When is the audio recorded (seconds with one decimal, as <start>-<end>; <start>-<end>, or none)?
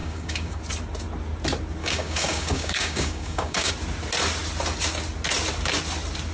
0.6-1.8; 3.7-6.3